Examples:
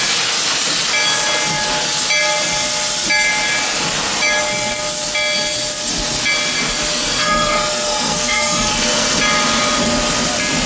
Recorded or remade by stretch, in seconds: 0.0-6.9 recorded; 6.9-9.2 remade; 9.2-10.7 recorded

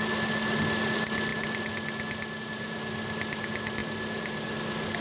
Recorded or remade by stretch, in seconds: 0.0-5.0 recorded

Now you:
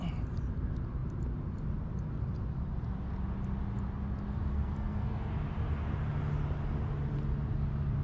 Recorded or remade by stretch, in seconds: 0.0-4.5 recorded; 4.5-5.3 remade; 5.3-8.0 recorded

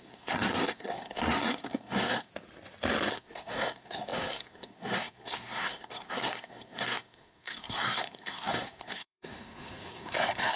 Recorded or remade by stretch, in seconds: 0.0-2.3 remade; 2.3-3.1 recorded; 3.1-10.6 remade

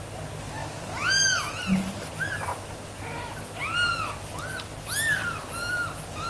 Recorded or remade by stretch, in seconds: 0.0-6.3 recorded

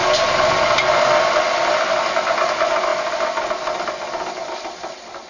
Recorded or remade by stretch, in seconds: 0.0-5.3 recorded

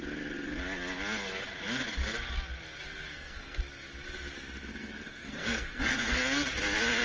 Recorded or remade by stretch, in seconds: 0.0-3.1 recorded; 3.1-3.6 remade; 3.6-4.7 recorded; 4.7-6.2 remade; 6.2-7.0 recorded